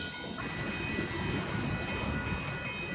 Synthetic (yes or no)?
no